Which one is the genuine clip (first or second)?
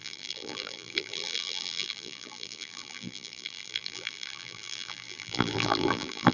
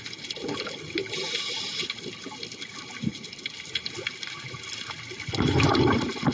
second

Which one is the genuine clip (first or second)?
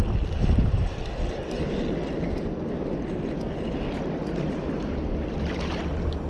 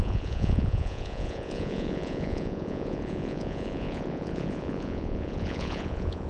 first